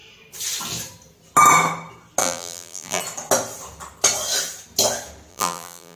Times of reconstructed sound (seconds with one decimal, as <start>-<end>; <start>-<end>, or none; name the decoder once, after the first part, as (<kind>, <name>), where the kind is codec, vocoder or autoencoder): 2.2-3.0 (vocoder, BigVGAN v2); 5.3-6.0